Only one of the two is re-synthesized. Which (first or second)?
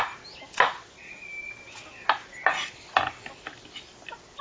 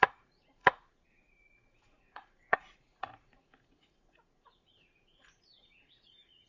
second